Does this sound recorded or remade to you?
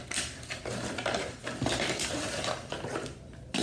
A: recorded